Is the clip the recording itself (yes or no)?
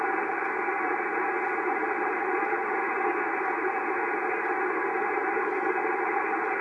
yes